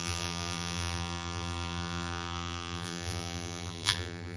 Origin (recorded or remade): remade